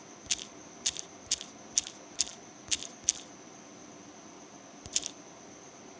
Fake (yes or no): no